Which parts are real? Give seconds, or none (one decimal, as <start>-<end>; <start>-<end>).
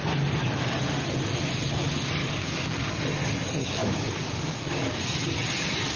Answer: 0.0-2.2; 3.0-3.6; 5.0-6.0